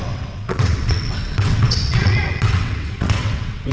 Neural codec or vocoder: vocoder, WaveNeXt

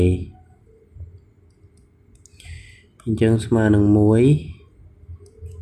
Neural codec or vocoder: none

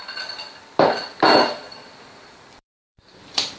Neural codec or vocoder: vocoder, BigVGAN v2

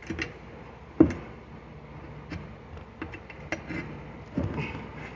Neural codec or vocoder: none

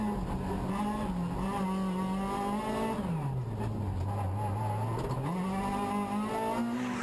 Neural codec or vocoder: none